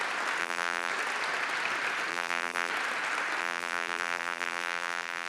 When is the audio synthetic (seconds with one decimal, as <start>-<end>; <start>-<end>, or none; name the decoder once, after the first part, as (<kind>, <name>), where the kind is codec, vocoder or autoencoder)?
0.4-0.9 (vocoder, BigVGAN v2); 2.1-2.7; 3.4-5.3